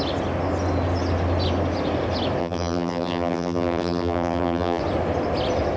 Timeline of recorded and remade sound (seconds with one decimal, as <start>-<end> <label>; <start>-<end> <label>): 0.0-2.4 recorded; 2.4-4.8 remade; 4.8-5.8 recorded